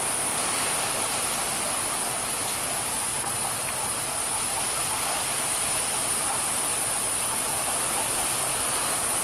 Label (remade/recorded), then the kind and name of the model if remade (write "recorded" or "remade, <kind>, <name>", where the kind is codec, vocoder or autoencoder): recorded